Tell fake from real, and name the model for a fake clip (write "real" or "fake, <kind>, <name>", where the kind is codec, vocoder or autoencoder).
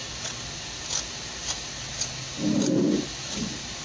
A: real